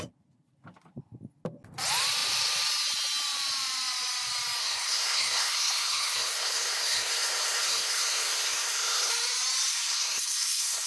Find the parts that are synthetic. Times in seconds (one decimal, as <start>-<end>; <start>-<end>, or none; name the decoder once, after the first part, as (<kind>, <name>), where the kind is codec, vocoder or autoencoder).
4.6-9.1 (codec, SNAC); 9.7-10.9